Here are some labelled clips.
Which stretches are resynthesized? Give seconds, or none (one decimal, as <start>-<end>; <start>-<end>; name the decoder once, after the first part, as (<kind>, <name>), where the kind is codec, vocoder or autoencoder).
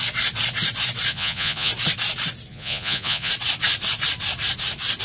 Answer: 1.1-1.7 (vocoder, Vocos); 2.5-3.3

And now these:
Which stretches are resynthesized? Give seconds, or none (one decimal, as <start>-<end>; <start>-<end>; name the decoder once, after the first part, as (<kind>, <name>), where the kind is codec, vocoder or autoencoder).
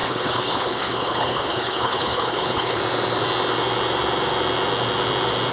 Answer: 0.0-2.8 (codec, HILCodec)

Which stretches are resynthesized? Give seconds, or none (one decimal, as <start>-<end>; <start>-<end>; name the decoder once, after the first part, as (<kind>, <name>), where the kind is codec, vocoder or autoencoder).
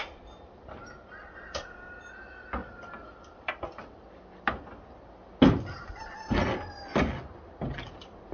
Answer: 2.6-3.5 (vocoder, BigVGAN v2)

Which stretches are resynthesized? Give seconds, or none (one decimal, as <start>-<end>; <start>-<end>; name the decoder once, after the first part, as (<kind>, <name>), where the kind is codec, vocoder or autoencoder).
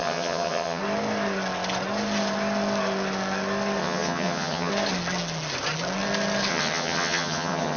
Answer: 0.0-0.8 (vocoder, HiFi-GAN); 3.8-4.7; 6.5-7.8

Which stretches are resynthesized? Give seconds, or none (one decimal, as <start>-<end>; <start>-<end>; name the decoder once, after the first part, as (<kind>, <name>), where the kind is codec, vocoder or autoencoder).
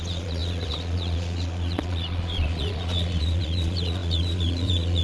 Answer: 0.0-5.0 (vocoder, Vocos)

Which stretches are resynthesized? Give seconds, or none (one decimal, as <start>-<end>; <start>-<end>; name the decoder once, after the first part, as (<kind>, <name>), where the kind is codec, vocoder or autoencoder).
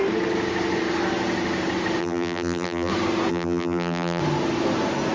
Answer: 2.0-2.9 (vocoder, BigVGAN v2); 3.3-4.2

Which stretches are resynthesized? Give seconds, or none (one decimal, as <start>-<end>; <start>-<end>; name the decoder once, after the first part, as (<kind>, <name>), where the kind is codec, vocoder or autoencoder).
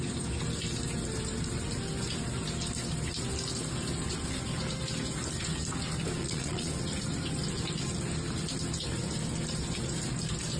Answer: 6.2-6.7 (vocoder, Vocos)